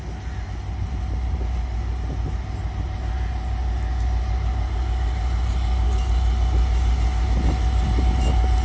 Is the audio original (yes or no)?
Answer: yes